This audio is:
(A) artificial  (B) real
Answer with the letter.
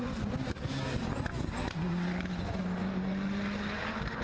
B